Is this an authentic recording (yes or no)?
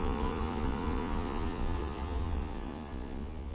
no